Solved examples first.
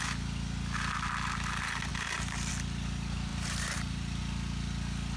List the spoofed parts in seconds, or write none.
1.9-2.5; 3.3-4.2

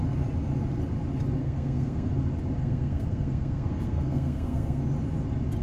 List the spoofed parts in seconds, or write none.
1.4-2.1; 2.6-4.8

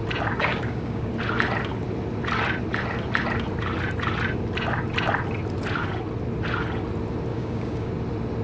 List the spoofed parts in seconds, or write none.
0.4-1.1; 7.3-7.9

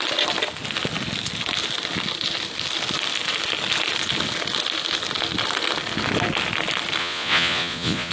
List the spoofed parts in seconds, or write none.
7.0-8.1

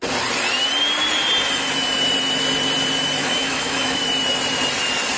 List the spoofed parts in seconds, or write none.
3.2-4.0

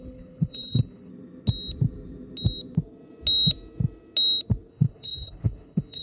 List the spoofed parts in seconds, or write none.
0.0-1.1; 4.7-6.0